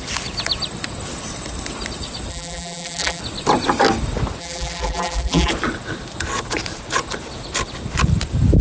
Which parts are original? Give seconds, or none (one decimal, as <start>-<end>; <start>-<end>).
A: 0.0-2.3; 3.2-4.4; 5.5-8.6